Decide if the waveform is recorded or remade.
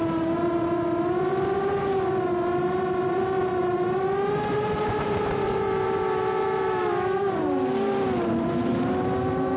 remade